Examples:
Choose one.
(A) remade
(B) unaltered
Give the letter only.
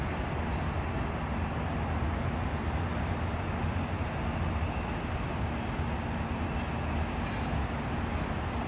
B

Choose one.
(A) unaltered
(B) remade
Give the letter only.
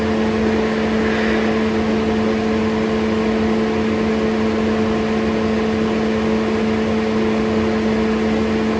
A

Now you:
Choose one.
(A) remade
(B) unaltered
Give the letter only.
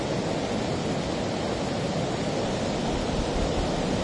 B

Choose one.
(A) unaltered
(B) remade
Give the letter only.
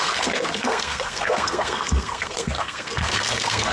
B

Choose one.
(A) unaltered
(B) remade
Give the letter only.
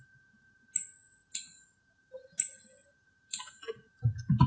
A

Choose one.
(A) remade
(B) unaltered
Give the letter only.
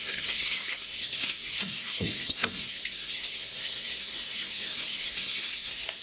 A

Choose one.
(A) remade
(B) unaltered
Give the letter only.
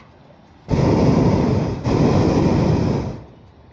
B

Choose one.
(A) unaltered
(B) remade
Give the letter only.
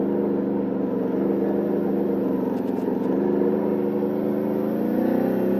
A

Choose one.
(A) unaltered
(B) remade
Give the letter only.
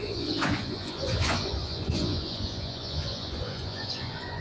B